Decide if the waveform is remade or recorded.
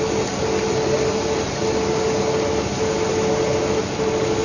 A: recorded